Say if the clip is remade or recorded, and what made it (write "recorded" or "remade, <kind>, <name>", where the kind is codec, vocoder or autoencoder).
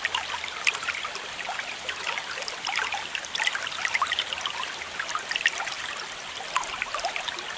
recorded